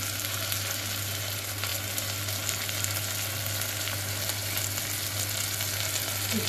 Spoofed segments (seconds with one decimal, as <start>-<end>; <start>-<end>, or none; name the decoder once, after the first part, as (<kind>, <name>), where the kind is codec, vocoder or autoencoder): none

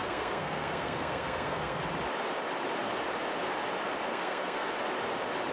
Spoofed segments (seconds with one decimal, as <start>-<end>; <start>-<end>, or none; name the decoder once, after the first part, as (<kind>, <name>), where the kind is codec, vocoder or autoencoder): 0.0-1.8 (codec, SNAC); 4.1-4.7

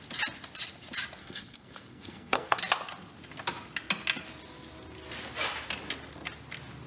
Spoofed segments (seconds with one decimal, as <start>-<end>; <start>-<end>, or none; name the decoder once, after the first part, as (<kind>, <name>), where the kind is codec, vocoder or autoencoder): 1.2-2.6 (codec, SNAC)

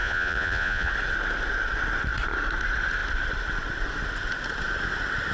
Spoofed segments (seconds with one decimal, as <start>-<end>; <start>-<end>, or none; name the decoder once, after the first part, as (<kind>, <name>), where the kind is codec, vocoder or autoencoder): 0.0-0.9 (vocoder, Vocos)

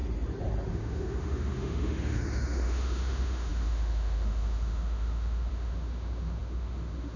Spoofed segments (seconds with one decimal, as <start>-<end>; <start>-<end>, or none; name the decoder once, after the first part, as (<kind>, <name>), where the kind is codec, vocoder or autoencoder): 0.7-7.2 (autoencoder, DAC-VAE)

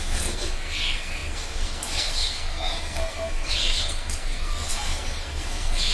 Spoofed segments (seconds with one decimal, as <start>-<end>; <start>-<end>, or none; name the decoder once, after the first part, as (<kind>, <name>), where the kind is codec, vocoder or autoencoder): 0.0-5.9 (codec, SNAC)